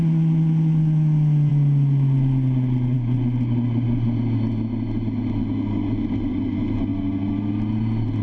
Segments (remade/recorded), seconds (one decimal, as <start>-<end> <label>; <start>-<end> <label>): 0.0-8.2 recorded